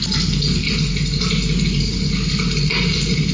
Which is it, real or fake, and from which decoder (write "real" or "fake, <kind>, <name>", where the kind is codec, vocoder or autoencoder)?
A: real